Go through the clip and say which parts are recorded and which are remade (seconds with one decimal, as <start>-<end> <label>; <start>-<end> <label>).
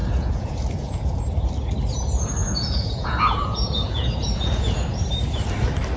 0.0-1.2 remade; 1.2-2.4 recorded; 2.4-5.0 remade; 5.0-6.0 recorded